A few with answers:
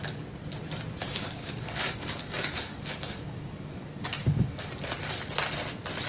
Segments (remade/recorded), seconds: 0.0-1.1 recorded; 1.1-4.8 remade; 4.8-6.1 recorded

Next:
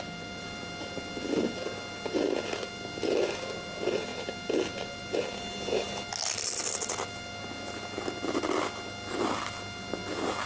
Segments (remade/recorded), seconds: 0.0-10.5 recorded

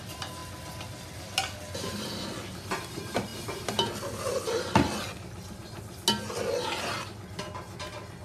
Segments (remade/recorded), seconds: 0.0-8.2 recorded

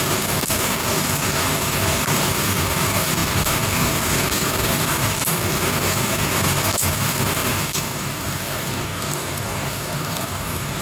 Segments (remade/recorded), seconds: 0.0-10.8 remade